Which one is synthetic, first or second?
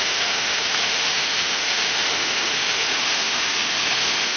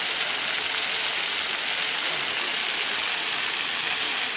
first